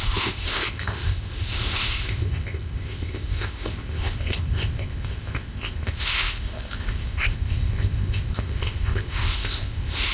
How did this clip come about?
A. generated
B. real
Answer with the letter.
A